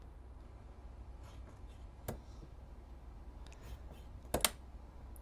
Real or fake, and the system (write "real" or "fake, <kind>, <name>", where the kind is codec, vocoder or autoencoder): real